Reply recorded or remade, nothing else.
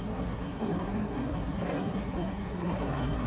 remade